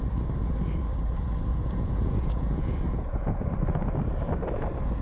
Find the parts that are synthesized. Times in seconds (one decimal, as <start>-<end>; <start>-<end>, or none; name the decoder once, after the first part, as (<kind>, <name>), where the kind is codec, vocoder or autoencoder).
1.5-3.5 (vocoder, Vocos)